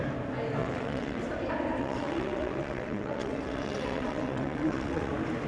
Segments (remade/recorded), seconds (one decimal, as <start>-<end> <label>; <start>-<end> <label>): 0.0-0.6 recorded; 0.6-1.2 remade; 1.2-1.8 recorded; 1.8-5.1 remade; 5.1-5.5 recorded